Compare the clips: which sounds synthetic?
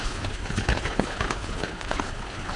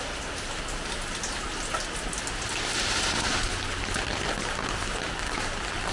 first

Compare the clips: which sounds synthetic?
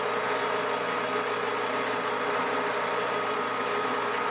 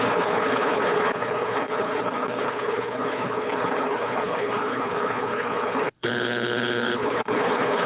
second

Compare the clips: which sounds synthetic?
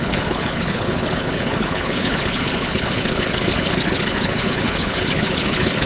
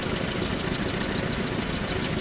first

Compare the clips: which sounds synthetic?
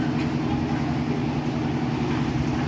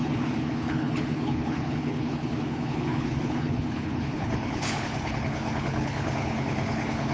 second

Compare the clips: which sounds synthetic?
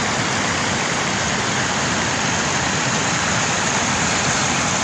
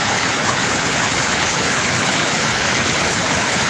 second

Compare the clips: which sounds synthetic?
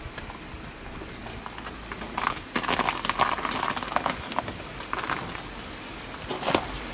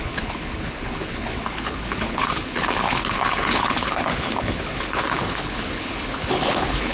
second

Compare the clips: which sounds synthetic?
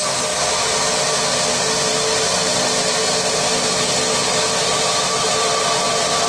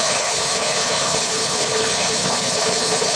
second